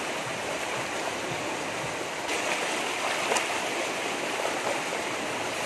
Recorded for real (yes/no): yes